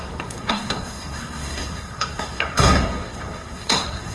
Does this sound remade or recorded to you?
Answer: remade